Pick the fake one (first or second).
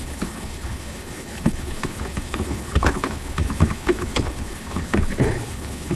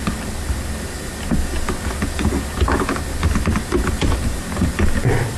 first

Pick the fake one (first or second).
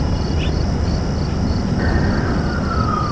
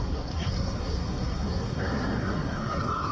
second